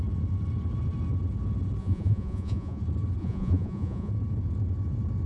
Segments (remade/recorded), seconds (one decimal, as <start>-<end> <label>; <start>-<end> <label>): 0.0-1.8 recorded; 1.8-2.8 remade; 2.8-3.2 recorded; 3.2-4.1 remade; 4.1-5.3 recorded